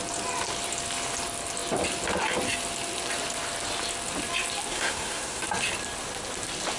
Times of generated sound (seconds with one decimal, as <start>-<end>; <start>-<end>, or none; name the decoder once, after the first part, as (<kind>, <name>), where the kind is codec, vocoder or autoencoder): 4.7-5.4 (codec, SNAC)